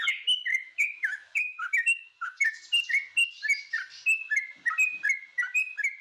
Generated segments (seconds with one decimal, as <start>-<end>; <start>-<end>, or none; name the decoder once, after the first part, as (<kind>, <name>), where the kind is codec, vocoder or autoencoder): 0.5-2.6 (autoencoder, DAC-VAE)